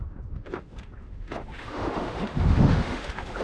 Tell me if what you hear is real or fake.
fake